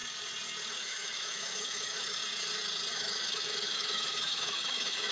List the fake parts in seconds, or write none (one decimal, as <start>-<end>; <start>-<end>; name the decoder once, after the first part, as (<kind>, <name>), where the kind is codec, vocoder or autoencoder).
0.7-2.2 (autoencoder, DAC-VAE); 2.9-5.1